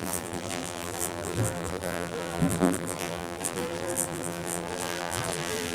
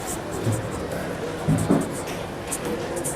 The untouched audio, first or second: second